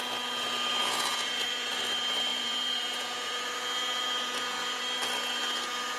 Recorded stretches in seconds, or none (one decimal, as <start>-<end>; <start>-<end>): 0.0-0.8; 1.8-2.3; 4.8-6.0

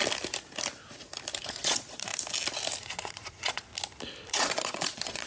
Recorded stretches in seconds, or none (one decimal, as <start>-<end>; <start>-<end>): 0.0-1.4; 2.1-3.0; 3.7-4.3